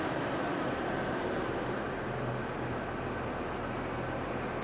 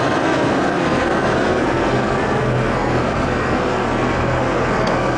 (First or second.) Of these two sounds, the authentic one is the first